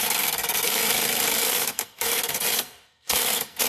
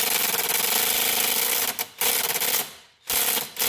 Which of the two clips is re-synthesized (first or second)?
first